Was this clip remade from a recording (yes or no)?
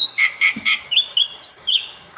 yes